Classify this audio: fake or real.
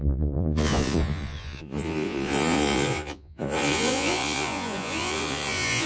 fake